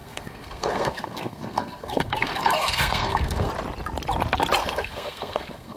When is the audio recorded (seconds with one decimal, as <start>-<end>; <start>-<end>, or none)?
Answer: 3.5-4.6